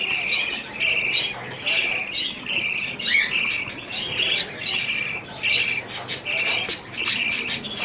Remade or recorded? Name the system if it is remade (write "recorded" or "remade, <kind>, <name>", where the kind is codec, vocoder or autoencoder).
recorded